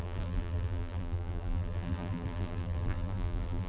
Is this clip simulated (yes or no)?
yes